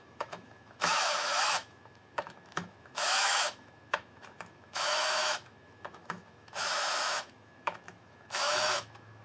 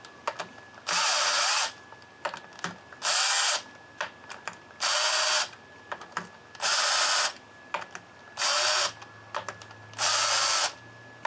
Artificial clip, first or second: first